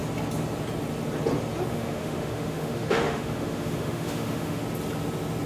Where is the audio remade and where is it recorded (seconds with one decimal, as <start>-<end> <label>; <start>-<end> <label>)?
0.0-1.7 recorded; 1.7-4.6 remade; 4.6-5.5 recorded